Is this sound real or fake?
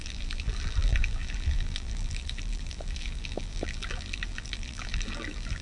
fake